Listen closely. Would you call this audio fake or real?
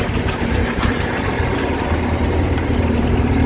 fake